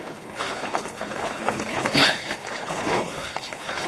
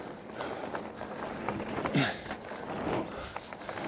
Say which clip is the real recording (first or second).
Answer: second